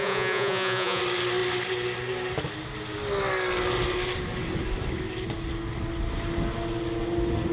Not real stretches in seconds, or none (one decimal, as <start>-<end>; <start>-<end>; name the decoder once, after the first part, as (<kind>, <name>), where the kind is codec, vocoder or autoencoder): 0.0-1.0 (vocoder, Vocos)